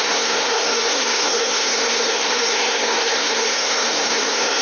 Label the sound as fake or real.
fake